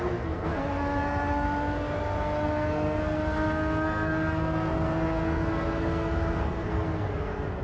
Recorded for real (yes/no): no